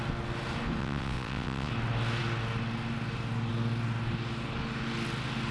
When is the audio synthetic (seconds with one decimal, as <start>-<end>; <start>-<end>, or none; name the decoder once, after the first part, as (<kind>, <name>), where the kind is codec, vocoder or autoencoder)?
0.8-1.7 (vocoder, WaveNeXt)